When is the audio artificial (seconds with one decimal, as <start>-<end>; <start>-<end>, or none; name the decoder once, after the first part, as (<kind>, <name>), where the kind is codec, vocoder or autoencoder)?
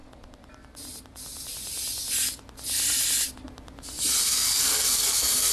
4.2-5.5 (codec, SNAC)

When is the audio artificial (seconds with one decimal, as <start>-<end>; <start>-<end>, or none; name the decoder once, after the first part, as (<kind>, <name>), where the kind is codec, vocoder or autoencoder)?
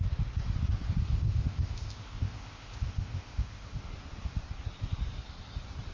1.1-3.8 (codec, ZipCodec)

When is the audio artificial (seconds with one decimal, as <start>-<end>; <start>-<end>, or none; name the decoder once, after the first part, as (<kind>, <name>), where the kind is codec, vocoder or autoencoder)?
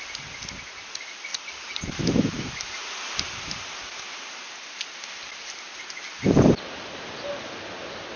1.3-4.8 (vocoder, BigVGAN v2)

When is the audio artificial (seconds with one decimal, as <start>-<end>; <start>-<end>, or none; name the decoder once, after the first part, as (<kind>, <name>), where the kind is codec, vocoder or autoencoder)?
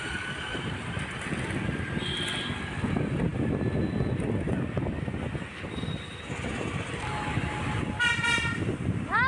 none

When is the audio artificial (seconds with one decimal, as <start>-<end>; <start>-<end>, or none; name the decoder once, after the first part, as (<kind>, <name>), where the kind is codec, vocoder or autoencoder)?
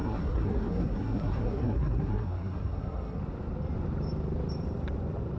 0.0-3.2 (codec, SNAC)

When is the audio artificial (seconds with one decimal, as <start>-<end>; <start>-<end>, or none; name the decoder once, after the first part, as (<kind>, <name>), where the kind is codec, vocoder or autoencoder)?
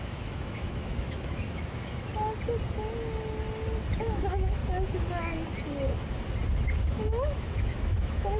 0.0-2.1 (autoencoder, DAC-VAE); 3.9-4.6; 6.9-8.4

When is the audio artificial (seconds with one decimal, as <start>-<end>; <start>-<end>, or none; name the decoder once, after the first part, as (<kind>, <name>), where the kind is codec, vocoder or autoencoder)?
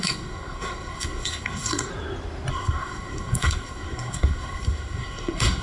0.0-1.9 (codec, SNAC); 2.5-5.6